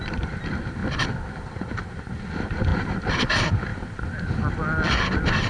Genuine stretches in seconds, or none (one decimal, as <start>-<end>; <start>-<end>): 0.0-0.8; 2.1-2.7; 3.3-3.7; 4.4-5.5

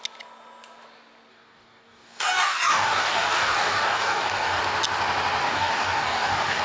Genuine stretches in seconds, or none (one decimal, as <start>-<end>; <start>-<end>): 0.0-1.3; 4.6-5.4

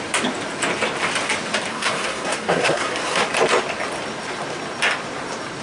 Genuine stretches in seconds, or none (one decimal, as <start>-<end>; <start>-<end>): 0.0-1.7; 3.2-5.6

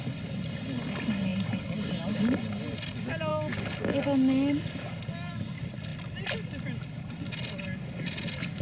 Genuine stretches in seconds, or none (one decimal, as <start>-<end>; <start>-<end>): 0.0-8.6

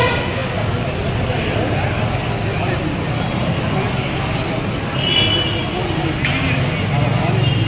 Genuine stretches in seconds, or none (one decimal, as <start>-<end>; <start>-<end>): 0.0-7.7

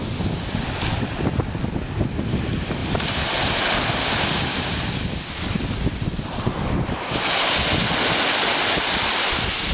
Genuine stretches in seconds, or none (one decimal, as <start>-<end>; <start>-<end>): 1.6-2.8; 7.1-9.7

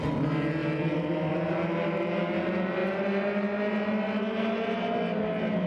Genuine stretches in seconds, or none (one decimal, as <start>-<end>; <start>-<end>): 0.0-0.6; 1.3-5.7